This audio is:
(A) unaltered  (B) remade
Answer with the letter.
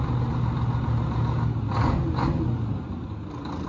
A